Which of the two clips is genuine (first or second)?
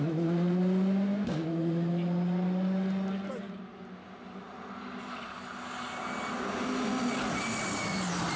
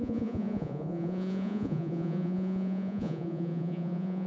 first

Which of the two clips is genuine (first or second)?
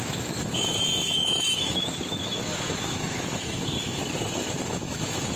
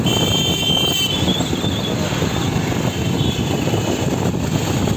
second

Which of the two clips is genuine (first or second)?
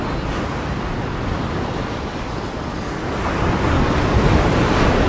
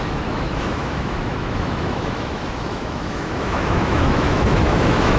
first